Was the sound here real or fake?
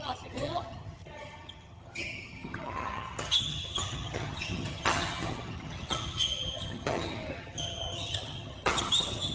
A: fake